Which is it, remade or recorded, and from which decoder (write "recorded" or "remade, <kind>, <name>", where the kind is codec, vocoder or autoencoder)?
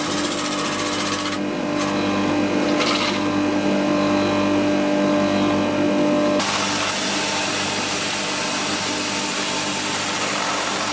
recorded